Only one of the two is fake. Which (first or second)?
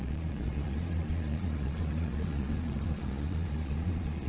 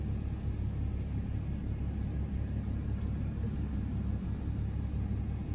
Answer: first